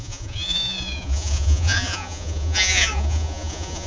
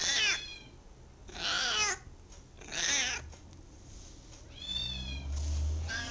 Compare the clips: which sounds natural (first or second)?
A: second